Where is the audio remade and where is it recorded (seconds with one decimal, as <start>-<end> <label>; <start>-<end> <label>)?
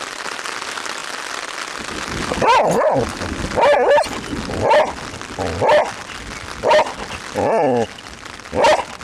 0.0-9.0 recorded